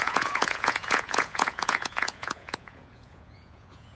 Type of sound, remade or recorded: remade